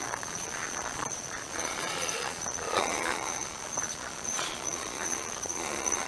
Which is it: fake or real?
fake